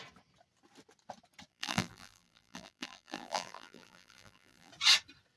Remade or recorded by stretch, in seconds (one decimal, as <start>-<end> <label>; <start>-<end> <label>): 0.0-1.5 recorded; 1.5-4.7 remade; 4.7-5.4 recorded